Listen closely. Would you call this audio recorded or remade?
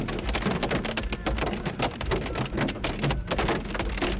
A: recorded